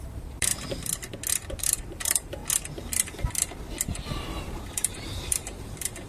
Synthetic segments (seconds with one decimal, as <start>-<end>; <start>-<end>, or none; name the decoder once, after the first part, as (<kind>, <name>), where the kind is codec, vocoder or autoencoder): 0.0-0.5 (vocoder, BigVGAN v2); 1.5-2.4; 3.8-6.1